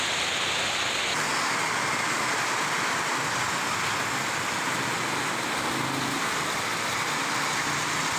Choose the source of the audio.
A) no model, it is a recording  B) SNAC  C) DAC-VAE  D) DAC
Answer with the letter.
A